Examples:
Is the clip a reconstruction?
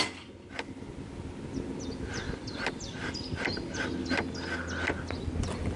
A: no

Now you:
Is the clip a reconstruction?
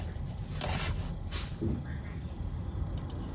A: no